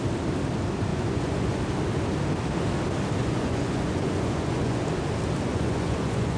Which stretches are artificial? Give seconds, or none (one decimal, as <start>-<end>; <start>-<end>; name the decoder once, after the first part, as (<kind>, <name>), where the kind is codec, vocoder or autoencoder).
0.9-1.6 (vocoder, Vocos); 3.2-4.8; 5.5-6.4